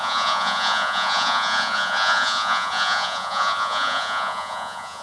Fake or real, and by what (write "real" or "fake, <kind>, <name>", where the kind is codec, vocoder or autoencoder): fake, vocoder, Vocos